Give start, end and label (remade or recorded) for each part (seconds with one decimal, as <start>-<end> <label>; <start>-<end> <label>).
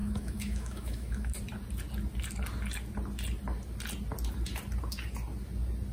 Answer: 0.0-1.3 remade; 1.3-5.9 recorded